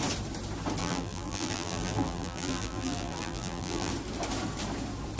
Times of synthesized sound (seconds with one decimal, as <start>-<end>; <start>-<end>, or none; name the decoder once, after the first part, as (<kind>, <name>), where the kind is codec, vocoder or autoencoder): 0.8-3.9 (vocoder, BigVGAN v2)